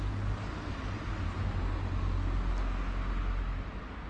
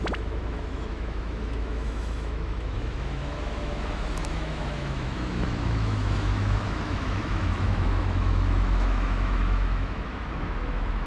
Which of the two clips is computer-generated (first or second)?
second